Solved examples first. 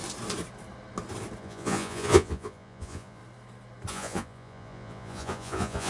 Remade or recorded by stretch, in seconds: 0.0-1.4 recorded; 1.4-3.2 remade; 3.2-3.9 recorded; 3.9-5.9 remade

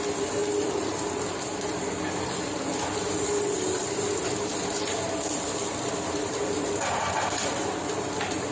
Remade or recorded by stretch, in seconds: 0.0-8.5 recorded

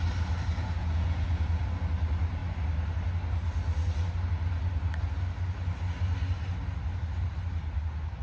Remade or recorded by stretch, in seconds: 0.0-0.8 recorded; 0.8-1.6 remade; 1.6-8.2 recorded

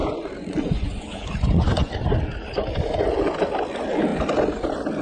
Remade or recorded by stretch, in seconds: 0.0-1.9 remade; 1.9-5.0 recorded

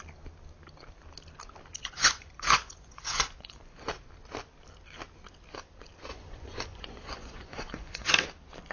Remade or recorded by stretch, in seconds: 0.0-1.8 recorded; 1.8-3.9 remade; 3.9-6.1 recorded; 6.1-8.1 remade; 8.1-8.7 recorded

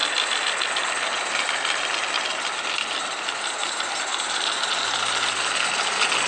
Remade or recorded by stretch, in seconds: 0.0-6.3 recorded

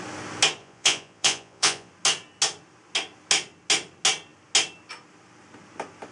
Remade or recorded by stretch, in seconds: 0.0-0.6 recorded; 0.6-1.9 remade; 1.9-6.1 recorded

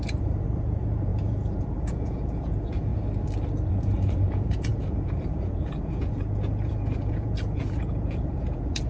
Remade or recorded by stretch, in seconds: 0.0-2.9 remade; 2.9-3.7 recorded; 3.7-8.9 remade